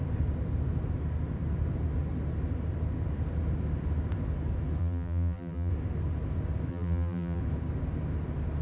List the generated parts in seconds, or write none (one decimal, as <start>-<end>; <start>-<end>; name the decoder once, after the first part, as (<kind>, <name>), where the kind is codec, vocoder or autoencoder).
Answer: 4.8-5.7 (vocoder, BigVGAN v2); 6.7-7.4